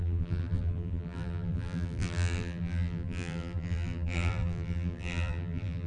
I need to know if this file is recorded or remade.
remade